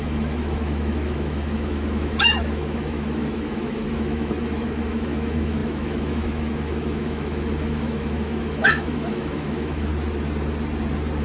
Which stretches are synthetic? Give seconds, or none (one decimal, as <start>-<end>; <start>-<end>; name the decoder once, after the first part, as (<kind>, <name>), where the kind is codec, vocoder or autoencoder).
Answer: 0.0-9.9 (autoencoder, DAC-VAE)